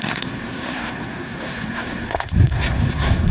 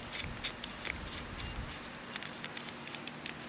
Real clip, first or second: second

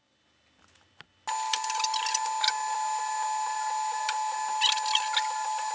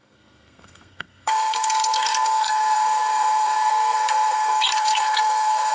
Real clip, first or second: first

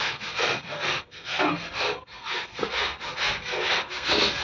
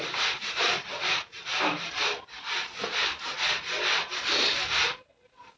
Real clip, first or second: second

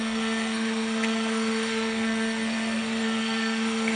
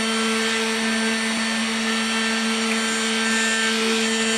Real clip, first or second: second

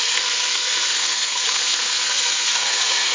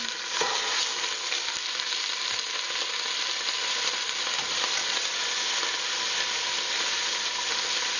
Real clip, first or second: second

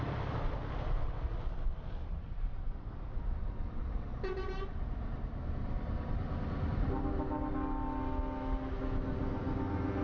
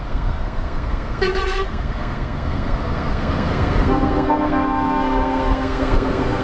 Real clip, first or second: first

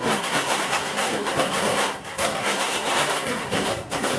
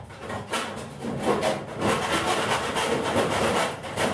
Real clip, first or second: second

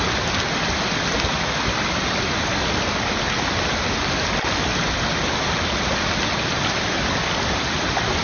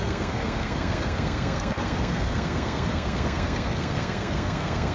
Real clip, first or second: first